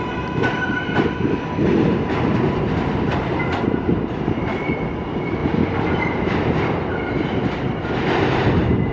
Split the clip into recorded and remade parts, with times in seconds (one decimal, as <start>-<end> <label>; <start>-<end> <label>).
0.0-8.9 recorded